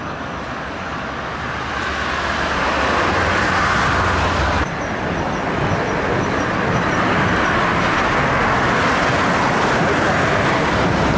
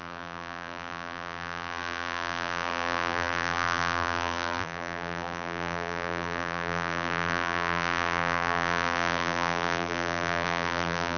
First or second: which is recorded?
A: first